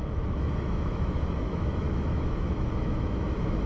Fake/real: fake